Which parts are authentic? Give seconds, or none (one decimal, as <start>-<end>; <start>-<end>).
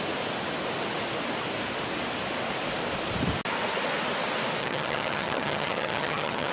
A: 0.0-4.6